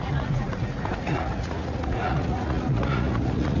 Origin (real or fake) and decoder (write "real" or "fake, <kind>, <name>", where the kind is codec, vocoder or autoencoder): fake, vocoder, Vocos